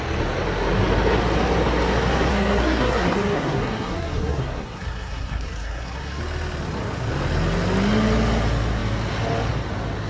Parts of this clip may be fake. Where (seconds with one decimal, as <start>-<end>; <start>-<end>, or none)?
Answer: 2.3-6.2